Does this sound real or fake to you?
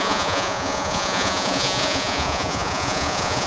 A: fake